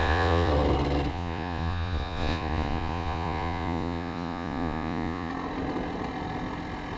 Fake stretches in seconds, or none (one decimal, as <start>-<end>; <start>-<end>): 0.0-0.5; 1.1-5.3